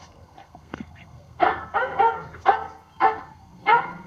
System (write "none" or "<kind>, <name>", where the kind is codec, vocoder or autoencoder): codec, SNAC